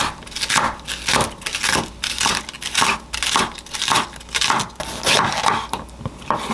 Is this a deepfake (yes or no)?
no